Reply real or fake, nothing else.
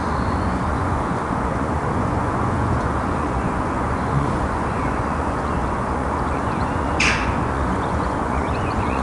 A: fake